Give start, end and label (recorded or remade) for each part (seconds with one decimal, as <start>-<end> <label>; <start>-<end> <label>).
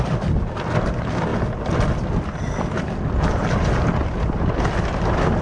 0.0-5.4 recorded